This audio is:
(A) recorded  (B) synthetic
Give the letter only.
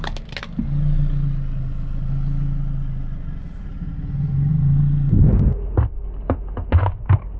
A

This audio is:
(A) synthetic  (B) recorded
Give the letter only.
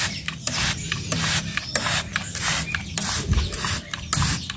B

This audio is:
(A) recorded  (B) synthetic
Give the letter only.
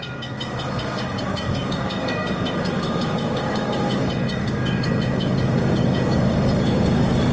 B